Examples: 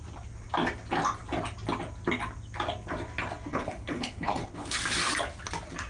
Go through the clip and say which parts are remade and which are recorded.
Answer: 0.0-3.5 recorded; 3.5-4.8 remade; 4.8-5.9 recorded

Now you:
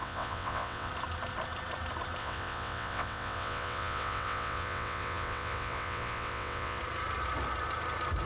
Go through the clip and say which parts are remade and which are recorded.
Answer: 0.0-0.9 remade; 0.9-2.2 recorded; 2.2-6.8 remade; 6.8-8.3 recorded

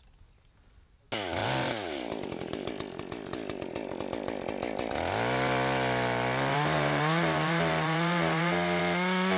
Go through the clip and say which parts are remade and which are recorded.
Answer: 0.0-1.4 recorded; 1.4-2.7 remade; 2.7-6.5 recorded; 6.5-8.8 remade; 8.8-9.4 recorded

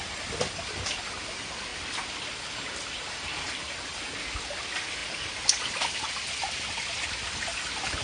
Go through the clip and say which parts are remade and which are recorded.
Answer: 0.0-8.0 recorded

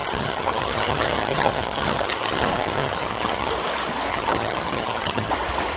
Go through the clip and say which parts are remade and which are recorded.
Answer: 0.0-3.5 remade; 3.5-4.1 recorded; 4.1-5.3 remade; 5.3-5.8 recorded

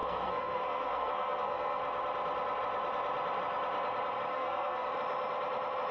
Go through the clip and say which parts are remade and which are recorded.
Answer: 0.0-1.8 remade; 1.8-4.3 recorded; 4.3-4.9 remade; 4.9-5.9 recorded

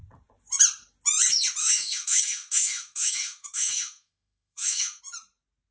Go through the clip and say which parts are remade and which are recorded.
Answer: 0.0-1.6 recorded; 1.6-5.0 remade; 5.0-5.7 recorded